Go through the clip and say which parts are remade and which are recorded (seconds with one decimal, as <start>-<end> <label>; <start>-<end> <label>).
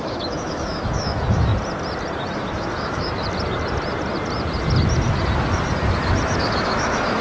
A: 0.0-1.5 remade; 1.5-2.3 recorded; 2.3-3.2 remade; 3.2-6.4 recorded; 6.4-7.2 remade